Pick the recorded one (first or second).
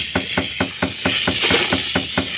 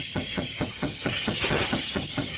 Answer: first